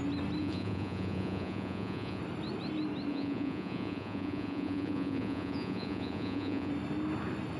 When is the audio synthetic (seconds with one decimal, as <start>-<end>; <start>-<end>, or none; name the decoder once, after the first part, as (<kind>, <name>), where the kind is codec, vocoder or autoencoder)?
0.4-2.2 (vocoder, Vocos); 3.1-6.7